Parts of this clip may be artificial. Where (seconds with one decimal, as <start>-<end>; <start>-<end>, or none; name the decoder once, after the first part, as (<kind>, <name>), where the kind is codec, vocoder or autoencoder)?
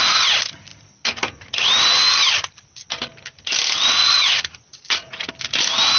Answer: 4.0-5.3 (vocoder, Vocos)